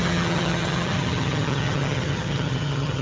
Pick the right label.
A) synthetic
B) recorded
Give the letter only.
A